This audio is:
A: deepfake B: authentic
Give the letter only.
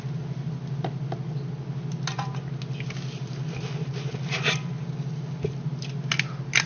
B